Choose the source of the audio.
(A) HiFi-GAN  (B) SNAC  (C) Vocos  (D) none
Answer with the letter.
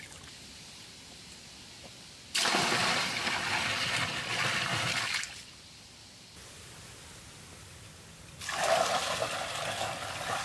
D